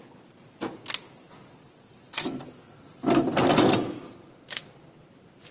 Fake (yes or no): no